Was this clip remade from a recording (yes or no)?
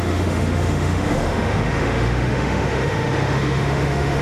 yes